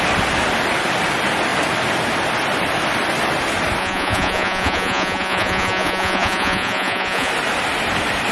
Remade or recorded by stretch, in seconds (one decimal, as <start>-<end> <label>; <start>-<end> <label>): 0.0-3.8 recorded; 3.8-7.3 remade; 7.3-8.3 recorded